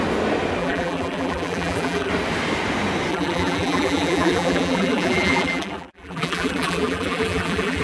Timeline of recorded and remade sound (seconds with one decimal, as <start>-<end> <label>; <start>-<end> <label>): 0.0-0.6 recorded; 0.6-2.1 remade; 2.1-3.1 recorded; 3.1-7.8 remade